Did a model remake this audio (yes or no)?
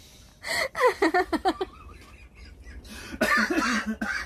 no